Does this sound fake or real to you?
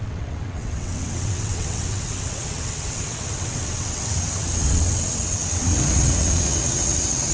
fake